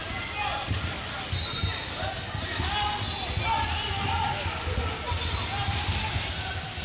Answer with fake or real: real